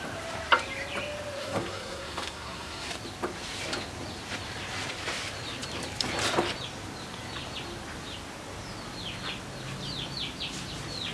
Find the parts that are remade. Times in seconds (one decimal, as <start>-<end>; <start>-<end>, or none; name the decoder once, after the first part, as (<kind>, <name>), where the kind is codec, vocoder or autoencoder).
1.4-2.9 (codec, SNAC)